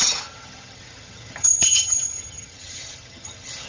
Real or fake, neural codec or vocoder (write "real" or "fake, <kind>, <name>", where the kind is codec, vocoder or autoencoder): fake, vocoder, HiFi-GAN